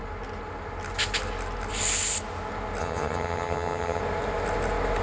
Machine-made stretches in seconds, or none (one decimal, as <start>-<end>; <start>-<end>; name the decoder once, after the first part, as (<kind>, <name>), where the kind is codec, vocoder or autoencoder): 2.8-4.0 (vocoder, HiFi-GAN)